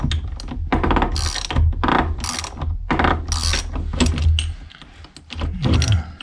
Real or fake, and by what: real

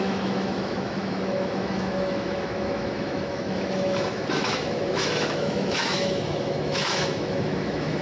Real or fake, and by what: fake, autoencoder, DAC-VAE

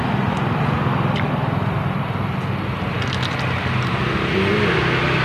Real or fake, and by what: real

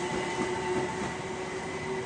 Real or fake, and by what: real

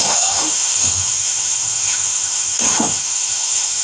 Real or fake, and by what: fake, autoencoder, DAC-VAE